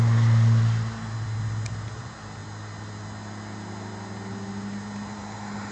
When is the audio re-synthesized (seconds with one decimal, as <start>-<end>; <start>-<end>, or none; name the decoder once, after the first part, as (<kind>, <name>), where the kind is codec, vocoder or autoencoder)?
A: none